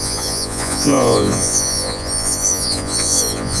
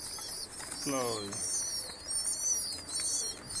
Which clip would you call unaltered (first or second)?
second